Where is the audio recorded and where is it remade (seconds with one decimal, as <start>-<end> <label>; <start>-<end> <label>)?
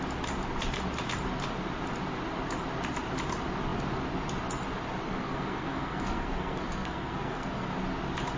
0.0-5.1 recorded; 5.1-7.7 remade; 7.7-8.4 recorded